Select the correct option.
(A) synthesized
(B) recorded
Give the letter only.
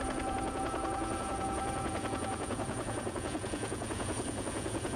A